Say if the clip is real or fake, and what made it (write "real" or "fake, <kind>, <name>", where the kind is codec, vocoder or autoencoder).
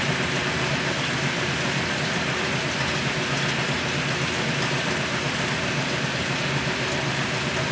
real